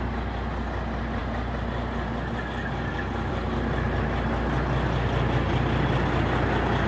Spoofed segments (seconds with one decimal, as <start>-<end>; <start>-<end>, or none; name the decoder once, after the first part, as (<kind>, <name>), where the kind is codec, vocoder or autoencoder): none

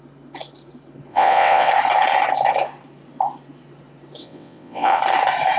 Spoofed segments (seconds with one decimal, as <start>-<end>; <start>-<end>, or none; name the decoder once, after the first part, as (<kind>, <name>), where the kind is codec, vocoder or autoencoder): 1.1-1.7 (vocoder, WaveNeXt); 4.2-5.0